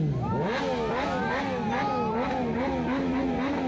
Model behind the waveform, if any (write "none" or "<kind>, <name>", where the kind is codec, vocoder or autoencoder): none